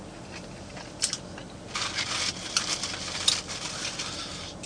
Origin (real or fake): real